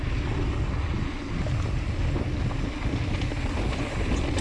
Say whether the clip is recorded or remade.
recorded